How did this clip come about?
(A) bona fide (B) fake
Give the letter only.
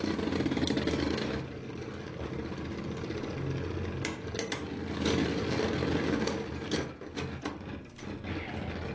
A